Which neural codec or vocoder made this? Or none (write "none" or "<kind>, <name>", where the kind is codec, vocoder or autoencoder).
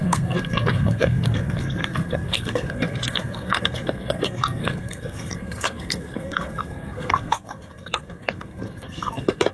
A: codec, SNAC